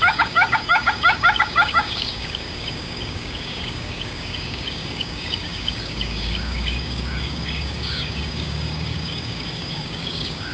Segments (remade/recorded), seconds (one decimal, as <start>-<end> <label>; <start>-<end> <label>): 0.0-10.5 remade